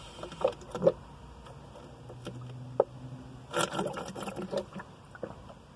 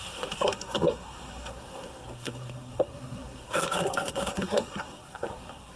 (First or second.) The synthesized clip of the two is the second